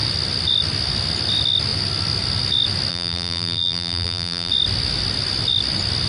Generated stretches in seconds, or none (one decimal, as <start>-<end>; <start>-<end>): 2.9-4.5